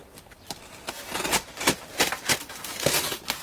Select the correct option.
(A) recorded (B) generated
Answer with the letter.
A